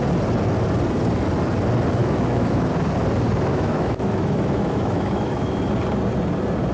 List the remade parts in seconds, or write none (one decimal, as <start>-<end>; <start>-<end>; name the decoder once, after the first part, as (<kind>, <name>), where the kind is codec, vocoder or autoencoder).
2.0-2.7 (autoencoder, DAC-VAE); 3.5-5.7